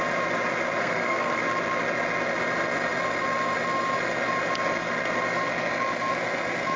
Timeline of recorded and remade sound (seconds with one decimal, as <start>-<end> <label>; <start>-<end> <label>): 0.0-0.8 recorded; 0.8-1.4 remade; 1.4-6.8 recorded